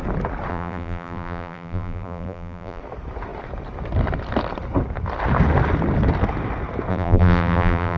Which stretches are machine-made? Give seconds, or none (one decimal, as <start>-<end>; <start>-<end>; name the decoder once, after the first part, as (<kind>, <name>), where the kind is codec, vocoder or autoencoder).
0.5-2.8 (vocoder, BigVGAN v2); 6.9-8.0